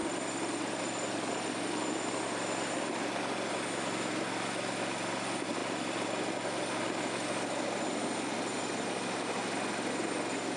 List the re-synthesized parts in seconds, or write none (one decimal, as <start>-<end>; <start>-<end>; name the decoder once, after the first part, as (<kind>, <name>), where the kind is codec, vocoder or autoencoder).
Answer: 0.0-1.1 (vocoder, BigVGAN v2)